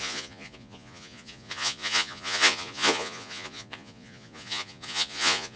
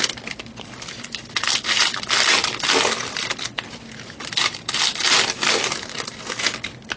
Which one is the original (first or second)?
second